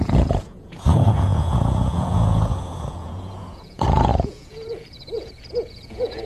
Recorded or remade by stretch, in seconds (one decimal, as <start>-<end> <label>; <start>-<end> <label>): 0.0-6.3 remade